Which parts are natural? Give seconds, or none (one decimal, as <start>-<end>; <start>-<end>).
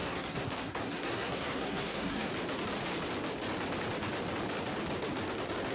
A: 2.3-5.7